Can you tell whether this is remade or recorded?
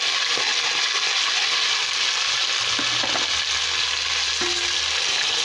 recorded